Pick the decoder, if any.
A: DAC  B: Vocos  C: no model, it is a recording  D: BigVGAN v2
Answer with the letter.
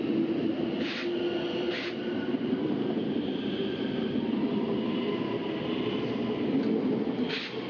C